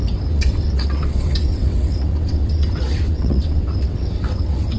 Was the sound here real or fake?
fake